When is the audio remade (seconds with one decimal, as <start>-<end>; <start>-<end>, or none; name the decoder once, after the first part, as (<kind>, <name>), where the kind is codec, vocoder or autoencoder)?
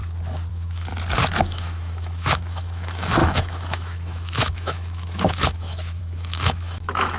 0.5-0.9 (autoencoder, DAC-VAE); 1.4-7.2